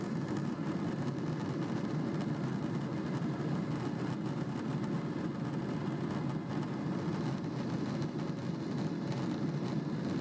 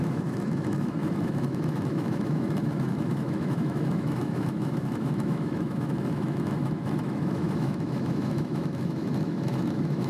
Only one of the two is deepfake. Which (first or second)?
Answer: second